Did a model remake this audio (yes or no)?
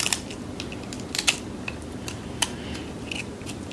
no